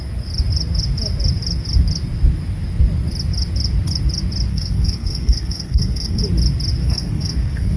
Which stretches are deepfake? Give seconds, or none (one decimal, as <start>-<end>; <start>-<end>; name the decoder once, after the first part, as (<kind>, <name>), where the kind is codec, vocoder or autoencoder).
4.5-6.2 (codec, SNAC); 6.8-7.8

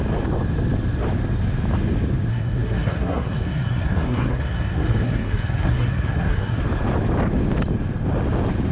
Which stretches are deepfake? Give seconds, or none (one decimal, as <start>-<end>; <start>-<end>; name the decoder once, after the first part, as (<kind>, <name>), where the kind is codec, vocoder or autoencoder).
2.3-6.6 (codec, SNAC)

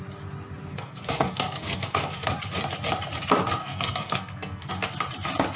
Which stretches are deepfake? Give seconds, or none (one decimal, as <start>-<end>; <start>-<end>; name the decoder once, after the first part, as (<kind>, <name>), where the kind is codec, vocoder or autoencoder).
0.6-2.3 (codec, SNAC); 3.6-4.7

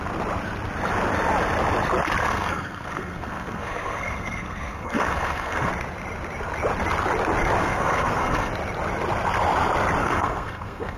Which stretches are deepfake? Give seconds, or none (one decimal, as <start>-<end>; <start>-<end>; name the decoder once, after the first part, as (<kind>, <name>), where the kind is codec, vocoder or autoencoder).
2.2-5.7 (codec, SNAC); 7.6-8.5; 10.0-11.0